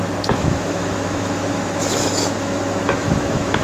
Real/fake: fake